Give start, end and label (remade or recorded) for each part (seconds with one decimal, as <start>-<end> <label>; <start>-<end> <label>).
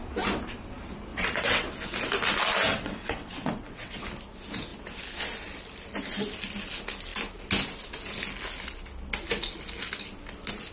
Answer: 0.0-1.1 recorded; 1.1-1.7 remade; 1.7-2.7 recorded; 2.7-4.0 remade; 4.0-10.7 recorded